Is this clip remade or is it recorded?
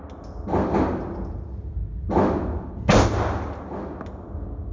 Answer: recorded